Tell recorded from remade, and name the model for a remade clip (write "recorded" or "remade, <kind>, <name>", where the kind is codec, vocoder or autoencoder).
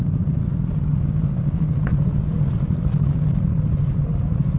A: recorded